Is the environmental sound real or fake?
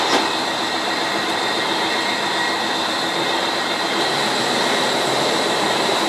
fake